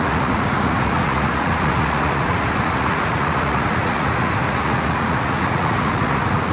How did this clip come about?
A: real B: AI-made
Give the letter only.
B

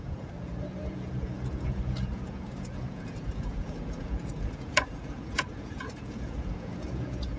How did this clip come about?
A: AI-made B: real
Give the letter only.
A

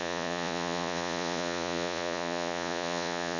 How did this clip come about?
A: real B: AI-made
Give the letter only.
B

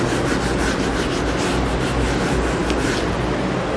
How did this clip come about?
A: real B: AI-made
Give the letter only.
A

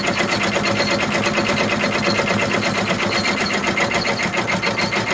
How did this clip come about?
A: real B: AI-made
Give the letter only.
A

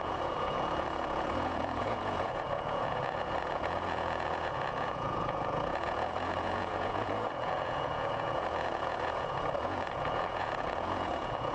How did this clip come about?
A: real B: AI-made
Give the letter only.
B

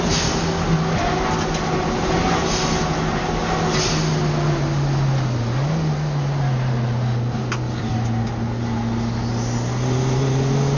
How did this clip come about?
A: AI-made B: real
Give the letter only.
B